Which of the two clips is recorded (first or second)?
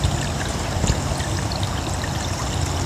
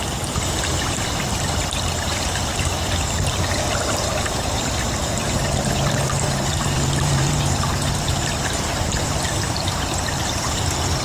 first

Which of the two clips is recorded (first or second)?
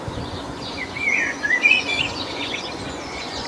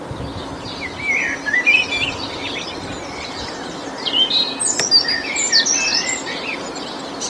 second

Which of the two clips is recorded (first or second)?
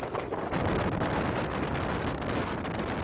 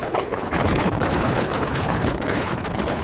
first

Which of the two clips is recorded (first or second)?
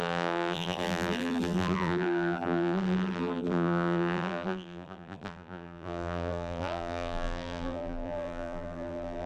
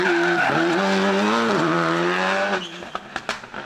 second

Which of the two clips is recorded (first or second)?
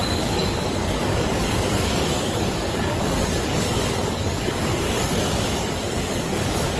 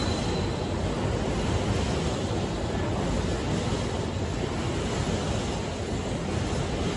second